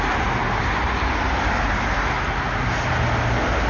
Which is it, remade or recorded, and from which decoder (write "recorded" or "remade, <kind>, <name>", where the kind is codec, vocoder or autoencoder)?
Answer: recorded